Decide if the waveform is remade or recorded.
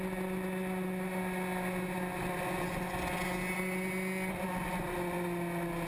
recorded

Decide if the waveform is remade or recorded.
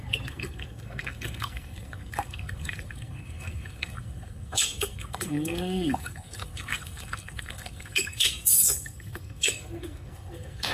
remade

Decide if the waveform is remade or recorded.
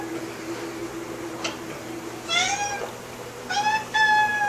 recorded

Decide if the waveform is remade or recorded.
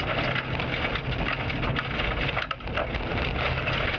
recorded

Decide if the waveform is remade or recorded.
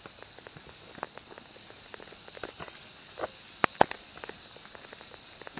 recorded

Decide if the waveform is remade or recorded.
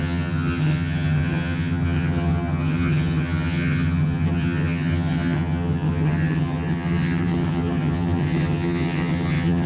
remade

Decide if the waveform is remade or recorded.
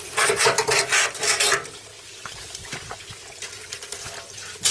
recorded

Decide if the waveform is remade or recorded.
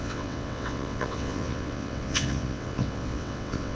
remade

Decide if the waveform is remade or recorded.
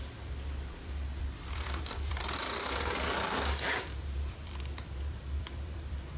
remade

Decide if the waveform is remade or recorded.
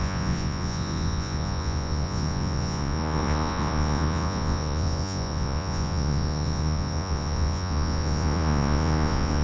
remade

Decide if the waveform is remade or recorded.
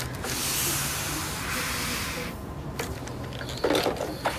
recorded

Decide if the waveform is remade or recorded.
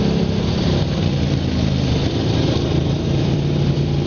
remade